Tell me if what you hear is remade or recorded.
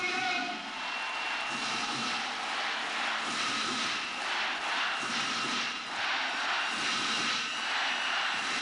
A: recorded